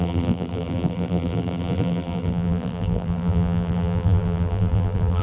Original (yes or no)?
no